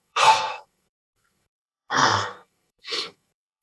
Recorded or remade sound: remade